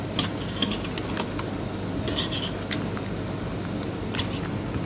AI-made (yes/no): no